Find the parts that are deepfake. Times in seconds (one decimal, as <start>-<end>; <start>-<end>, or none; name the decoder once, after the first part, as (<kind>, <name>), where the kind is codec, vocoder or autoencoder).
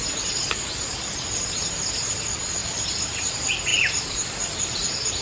2.6-3.3 (vocoder, BigVGAN v2); 3.7-4.5